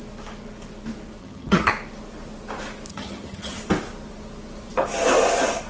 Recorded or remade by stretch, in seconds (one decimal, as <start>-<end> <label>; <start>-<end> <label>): 0.0-1.2 recorded; 1.2-1.7 remade; 1.7-2.9 recorded; 2.9-3.6 remade; 3.6-5.7 recorded